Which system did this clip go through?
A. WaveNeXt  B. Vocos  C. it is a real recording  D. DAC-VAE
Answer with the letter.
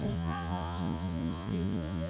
B